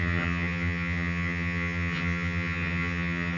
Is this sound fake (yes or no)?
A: yes